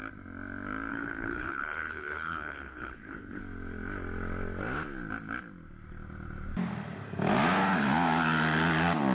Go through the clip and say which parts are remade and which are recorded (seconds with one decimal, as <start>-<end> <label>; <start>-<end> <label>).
0.0-0.9 recorded; 0.9-3.4 remade; 3.4-9.1 recorded